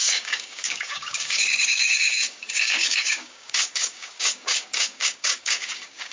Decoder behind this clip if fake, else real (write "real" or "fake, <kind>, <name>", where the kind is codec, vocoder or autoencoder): fake, codec, DAC